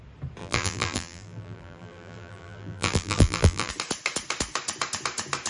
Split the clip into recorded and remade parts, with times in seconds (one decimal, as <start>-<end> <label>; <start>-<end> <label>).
0.0-0.4 recorded; 0.4-3.7 remade; 3.7-5.5 recorded